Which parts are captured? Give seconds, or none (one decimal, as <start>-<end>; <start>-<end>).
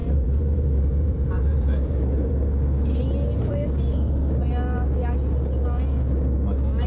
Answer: 2.3-6.9